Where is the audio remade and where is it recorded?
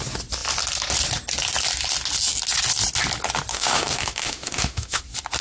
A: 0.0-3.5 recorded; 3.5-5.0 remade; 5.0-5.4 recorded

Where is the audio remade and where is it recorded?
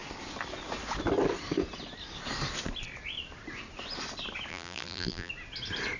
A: 0.0-4.5 recorded; 4.5-5.3 remade; 5.3-6.0 recorded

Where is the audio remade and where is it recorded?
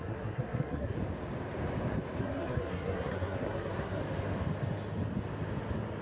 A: 0.0-1.0 remade; 1.0-2.2 recorded; 2.2-4.0 remade; 4.0-6.0 recorded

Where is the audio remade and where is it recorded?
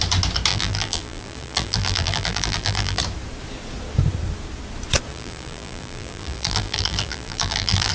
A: 0.0-0.5 recorded; 0.5-3.0 remade; 3.0-5.1 recorded; 5.1-7.9 remade